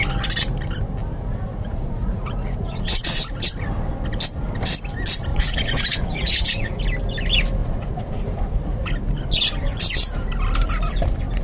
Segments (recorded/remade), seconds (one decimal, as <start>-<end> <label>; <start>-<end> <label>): 0.0-1.5 recorded; 1.5-3.2 remade; 3.2-5.3 recorded; 5.3-6.8 remade; 6.8-7.6 recorded; 7.6-8.9 remade; 8.9-11.4 recorded